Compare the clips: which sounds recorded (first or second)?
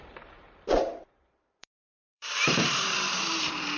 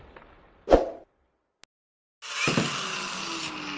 second